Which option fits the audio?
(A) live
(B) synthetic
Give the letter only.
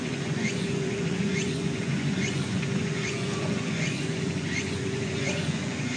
B